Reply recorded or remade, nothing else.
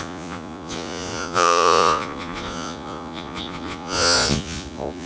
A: remade